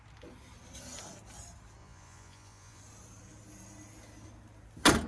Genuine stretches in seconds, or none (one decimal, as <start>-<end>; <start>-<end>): 0.0-1.8; 2.8-5.1